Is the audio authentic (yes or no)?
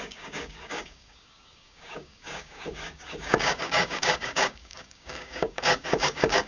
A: no